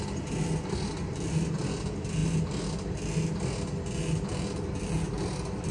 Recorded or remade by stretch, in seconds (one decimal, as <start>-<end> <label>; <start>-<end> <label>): 0.0-5.7 recorded